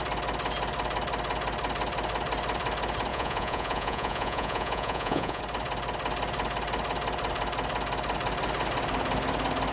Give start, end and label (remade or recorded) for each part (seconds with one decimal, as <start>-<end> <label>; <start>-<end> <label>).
0.0-3.1 recorded; 3.1-5.4 remade; 5.4-9.7 recorded